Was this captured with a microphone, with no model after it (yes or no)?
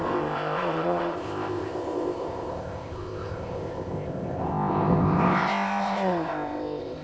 no